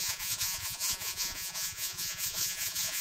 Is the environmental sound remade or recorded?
remade